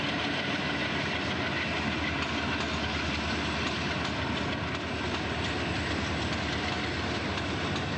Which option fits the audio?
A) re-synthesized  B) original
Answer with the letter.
B